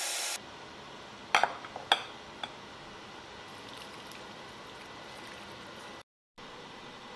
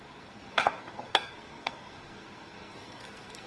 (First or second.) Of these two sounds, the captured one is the first